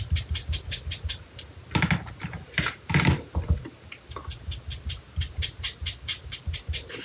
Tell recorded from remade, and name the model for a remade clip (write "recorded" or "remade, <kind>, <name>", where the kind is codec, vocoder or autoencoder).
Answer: recorded